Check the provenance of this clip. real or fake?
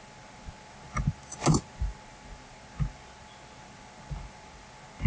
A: real